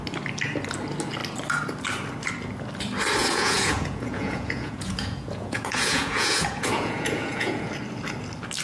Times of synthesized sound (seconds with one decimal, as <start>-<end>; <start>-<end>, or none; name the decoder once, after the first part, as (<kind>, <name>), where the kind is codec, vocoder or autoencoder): 3.2-7.7 (vocoder, Vocos)